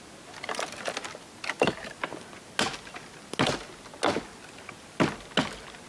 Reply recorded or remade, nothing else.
recorded